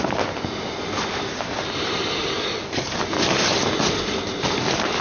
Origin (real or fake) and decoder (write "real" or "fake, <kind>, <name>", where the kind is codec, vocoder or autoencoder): real